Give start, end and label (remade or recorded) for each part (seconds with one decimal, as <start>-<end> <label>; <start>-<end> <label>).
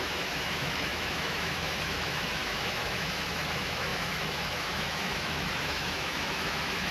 0.0-6.9 remade